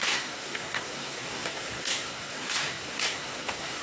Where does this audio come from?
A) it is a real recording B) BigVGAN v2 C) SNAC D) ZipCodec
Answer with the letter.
C